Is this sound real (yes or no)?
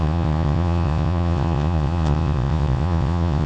no